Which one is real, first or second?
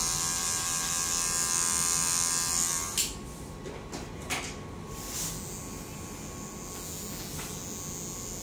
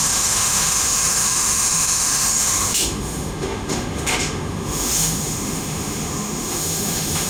first